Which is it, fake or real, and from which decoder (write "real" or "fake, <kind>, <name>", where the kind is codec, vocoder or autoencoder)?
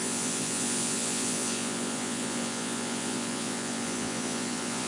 fake, vocoder, Vocos